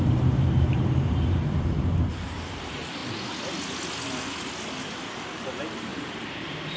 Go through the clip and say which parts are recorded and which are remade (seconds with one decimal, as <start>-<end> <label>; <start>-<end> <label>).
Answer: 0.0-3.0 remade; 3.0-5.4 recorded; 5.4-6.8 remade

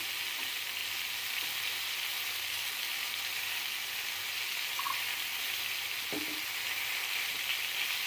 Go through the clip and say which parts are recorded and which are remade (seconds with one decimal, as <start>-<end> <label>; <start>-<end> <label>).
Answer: 0.0-8.1 recorded

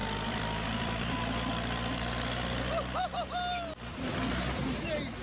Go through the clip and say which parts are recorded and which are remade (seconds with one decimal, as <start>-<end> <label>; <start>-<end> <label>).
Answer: 0.0-3.1 remade; 3.1-5.2 recorded

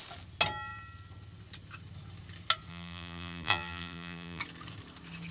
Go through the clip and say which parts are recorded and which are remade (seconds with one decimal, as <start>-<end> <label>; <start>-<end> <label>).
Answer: 0.0-2.7 recorded; 2.7-4.4 remade; 4.4-5.3 recorded